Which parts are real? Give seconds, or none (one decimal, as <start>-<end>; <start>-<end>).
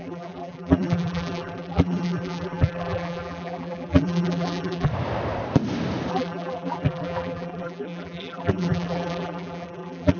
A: 4.9-6.1